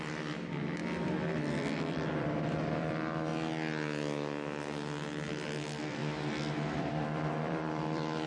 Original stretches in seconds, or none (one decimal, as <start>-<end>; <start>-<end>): 3.3-5.3; 6.0-6.8